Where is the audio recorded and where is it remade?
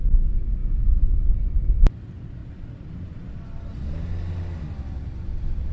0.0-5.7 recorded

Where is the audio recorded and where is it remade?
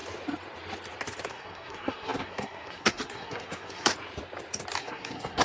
0.0-1.3 recorded; 1.3-3.9 remade; 3.9-4.8 recorded; 4.8-5.4 remade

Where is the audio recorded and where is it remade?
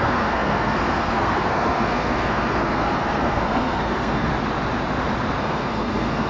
0.0-4.3 remade; 4.3-5.4 recorded; 5.4-6.3 remade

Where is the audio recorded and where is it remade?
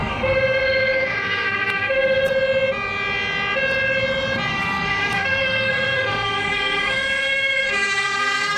0.0-2.3 remade; 2.3-4.5 recorded; 4.5-8.6 remade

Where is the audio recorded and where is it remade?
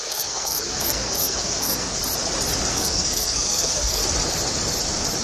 0.0-2.0 remade; 2.0-2.7 recorded; 2.7-4.0 remade; 4.0-5.2 recorded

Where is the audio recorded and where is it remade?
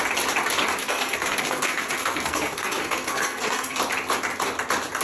0.0-0.8 recorded; 0.8-3.8 remade; 3.8-5.0 recorded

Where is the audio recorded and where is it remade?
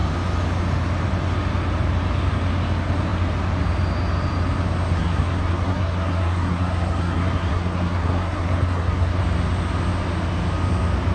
0.0-4.9 recorded; 4.9-9.2 remade; 9.2-11.1 recorded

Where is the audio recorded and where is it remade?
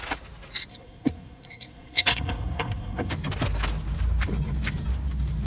0.0-0.7 recorded; 0.7-3.1 remade; 3.1-5.5 recorded